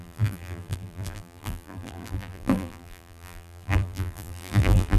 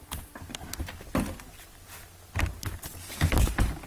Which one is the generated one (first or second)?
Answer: first